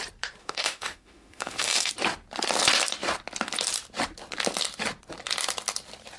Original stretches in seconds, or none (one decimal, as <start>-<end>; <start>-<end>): 0.0-0.4; 1.9-6.2